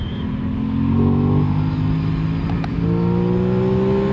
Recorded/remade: recorded